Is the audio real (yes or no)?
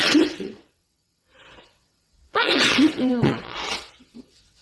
no